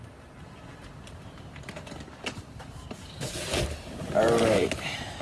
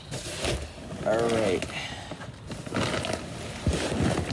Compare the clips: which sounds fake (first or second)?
first